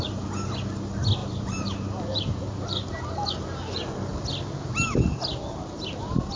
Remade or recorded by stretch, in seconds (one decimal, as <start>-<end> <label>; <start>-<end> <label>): 0.0-1.2 recorded; 1.2-3.0 remade; 3.0-6.4 recorded